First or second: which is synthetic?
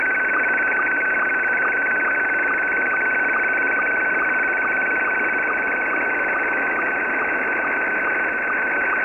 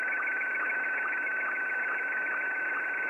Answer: second